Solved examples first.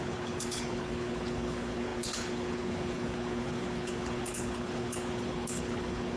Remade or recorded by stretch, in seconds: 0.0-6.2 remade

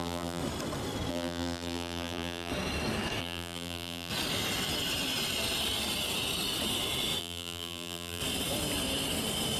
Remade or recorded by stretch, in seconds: 0.0-0.4 remade; 0.4-1.1 recorded; 1.1-2.5 remade; 2.5-3.2 recorded; 3.2-4.1 remade; 4.1-7.2 recorded; 7.2-8.2 remade; 8.2-9.6 recorded

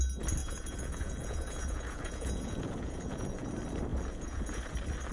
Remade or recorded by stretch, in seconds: 0.0-0.4 recorded; 0.4-3.5 remade; 3.5-3.9 recorded; 3.9-4.6 remade; 4.6-5.1 recorded

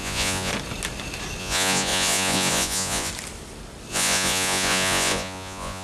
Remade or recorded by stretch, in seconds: 0.0-0.5 remade; 0.5-1.4 recorded; 1.4-3.1 remade; 3.1-3.9 recorded; 3.9-5.8 remade

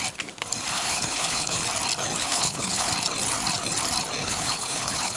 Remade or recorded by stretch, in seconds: 0.0-0.7 recorded; 0.7-1.6 remade; 1.6-2.2 recorded; 2.2-2.9 remade; 2.9-4.2 recorded; 4.2-5.2 remade